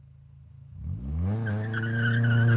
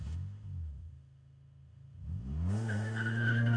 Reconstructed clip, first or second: second